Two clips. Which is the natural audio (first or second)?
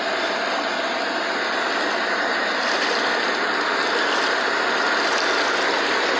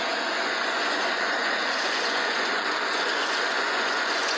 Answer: first